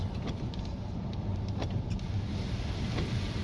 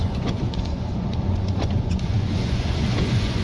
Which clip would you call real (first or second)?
first